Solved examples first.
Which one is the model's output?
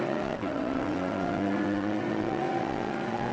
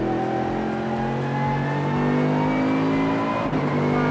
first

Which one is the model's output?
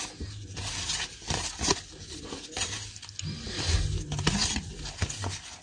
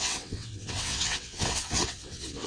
second